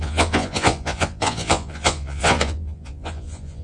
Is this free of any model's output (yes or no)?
no